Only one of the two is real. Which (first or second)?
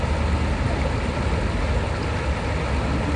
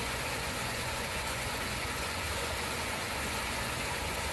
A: first